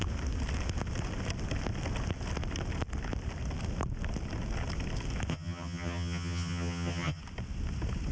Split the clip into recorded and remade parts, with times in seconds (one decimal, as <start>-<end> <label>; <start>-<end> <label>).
0.0-5.3 recorded; 5.3-7.2 remade; 7.2-8.1 recorded